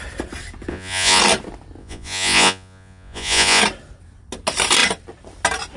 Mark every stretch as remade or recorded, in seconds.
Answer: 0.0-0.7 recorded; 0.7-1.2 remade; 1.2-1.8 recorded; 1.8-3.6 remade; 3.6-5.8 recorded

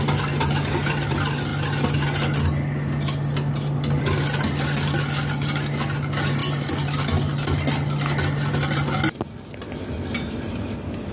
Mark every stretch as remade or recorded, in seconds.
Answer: 0.0-11.1 recorded

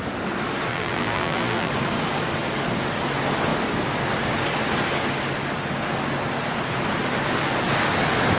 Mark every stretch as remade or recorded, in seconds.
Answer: 0.0-0.7 recorded; 0.7-1.7 remade; 1.7-8.4 recorded

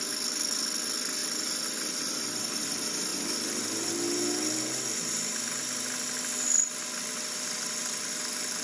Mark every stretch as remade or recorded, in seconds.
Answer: 0.0-8.6 recorded

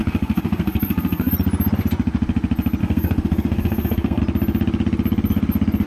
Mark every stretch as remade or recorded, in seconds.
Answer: 0.0-1.3 remade; 1.3-2.8 recorded; 2.8-4.2 remade; 4.2-5.9 recorded

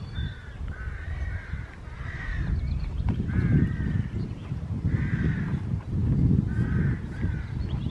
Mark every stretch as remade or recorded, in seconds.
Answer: 0.0-7.9 recorded

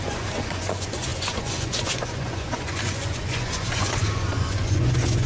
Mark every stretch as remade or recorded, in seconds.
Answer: 0.0-5.3 remade

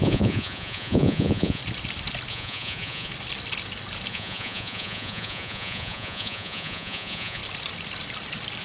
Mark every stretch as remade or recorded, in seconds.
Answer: 0.0-1.6 remade; 1.6-2.3 recorded; 2.3-3.1 remade; 3.1-4.1 recorded; 4.1-7.4 remade; 7.4-8.6 recorded